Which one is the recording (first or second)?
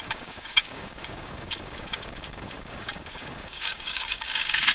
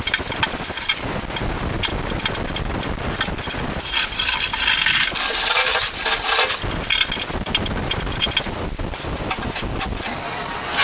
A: second